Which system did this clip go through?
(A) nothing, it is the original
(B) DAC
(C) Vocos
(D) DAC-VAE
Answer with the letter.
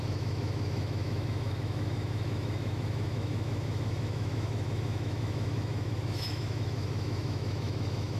D